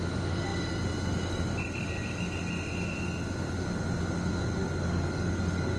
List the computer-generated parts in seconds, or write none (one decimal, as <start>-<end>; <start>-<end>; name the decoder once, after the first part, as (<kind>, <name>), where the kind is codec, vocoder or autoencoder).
4.6-5.8 (codec, DAC)